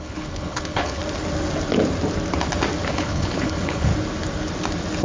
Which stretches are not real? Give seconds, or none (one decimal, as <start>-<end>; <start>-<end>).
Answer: 0.0-1.0; 2.9-3.9